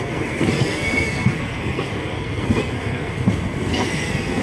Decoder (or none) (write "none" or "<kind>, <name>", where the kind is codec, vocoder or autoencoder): codec, SNAC